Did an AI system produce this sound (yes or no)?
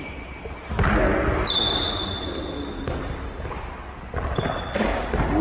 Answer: no